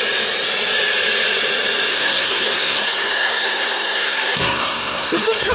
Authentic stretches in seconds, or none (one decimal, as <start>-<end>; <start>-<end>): 0.0-1.9